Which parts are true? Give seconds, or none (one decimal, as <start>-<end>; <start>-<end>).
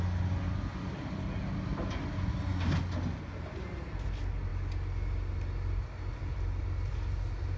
0.0-7.6